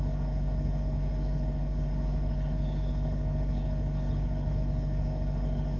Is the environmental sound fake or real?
fake